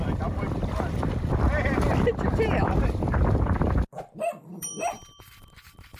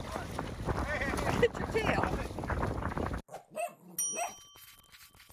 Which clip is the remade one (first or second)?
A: first